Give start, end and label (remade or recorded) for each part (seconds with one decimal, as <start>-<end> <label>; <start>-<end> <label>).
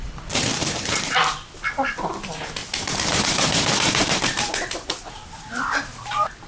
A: 0.0-0.6 recorded; 0.6-1.2 remade; 1.2-2.6 recorded; 2.6-4.2 remade; 4.2-6.5 recorded